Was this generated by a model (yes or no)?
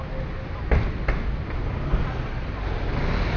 no